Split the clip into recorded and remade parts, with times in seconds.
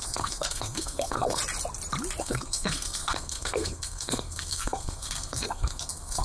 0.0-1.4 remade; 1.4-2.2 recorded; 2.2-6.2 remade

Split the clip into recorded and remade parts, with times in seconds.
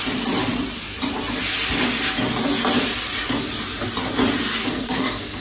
0.0-4.6 recorded; 4.6-5.4 remade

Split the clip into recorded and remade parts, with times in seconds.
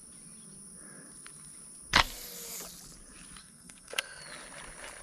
0.0-3.4 recorded; 3.4-4.2 remade; 4.2-5.0 recorded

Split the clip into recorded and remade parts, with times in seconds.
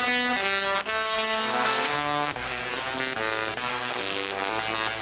0.0-0.8 recorded; 0.8-2.6 remade; 2.6-3.7 recorded; 3.7-4.4 remade; 4.4-5.0 recorded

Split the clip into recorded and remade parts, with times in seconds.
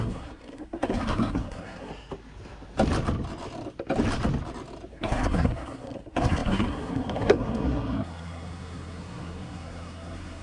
0.0-1.9 remade; 1.9-4.9 recorded; 4.9-10.4 remade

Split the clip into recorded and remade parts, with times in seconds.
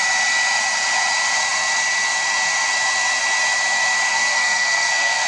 0.0-4.1 recorded; 4.1-5.3 remade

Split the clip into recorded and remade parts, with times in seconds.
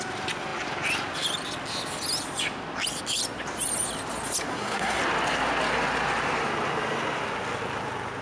0.0-4.5 recorded; 4.5-5.0 remade; 5.0-8.2 recorded